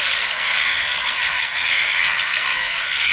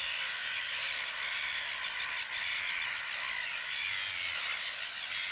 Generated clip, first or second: first